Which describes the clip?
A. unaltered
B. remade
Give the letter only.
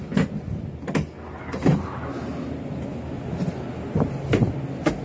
A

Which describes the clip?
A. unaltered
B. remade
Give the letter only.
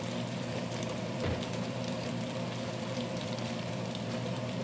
B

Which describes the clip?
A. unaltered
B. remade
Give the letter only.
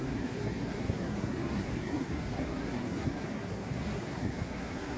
B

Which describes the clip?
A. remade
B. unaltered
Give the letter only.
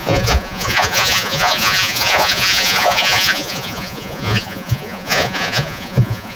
A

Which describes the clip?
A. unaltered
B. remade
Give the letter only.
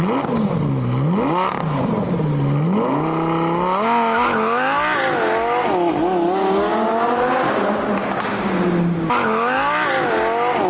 A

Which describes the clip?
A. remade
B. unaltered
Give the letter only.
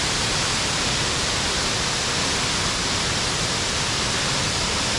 B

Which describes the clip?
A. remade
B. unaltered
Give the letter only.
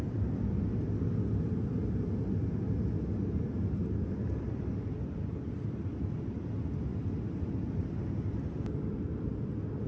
B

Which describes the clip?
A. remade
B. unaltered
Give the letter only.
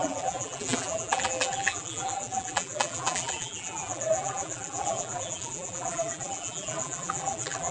A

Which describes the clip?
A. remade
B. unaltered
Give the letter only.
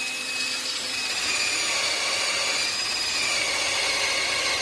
B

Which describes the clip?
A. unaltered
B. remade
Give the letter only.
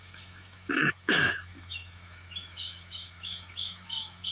B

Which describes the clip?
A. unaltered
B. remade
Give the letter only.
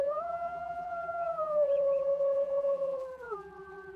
B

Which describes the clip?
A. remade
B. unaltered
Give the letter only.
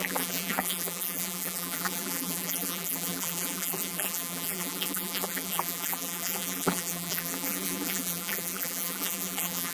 A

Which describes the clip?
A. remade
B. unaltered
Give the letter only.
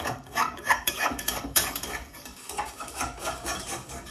A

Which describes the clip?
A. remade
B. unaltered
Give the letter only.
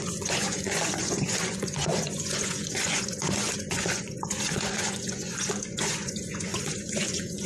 A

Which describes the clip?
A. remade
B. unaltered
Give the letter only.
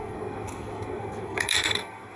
A